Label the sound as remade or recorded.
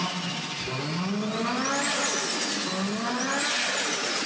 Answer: recorded